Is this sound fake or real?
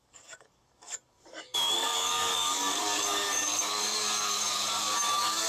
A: fake